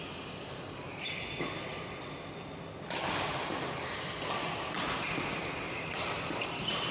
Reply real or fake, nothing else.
real